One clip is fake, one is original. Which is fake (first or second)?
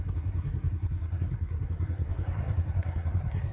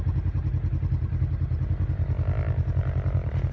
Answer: first